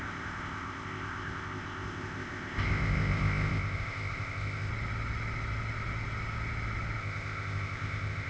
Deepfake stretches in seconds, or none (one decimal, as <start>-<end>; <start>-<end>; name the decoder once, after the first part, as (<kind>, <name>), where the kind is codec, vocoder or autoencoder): 0.0-4.7 (codec, ZipCodec); 7.0-8.3